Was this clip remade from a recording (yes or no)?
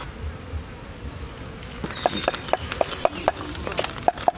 no